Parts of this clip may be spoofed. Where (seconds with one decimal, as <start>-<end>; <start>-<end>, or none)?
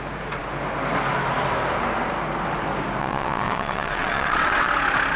3.0-4.7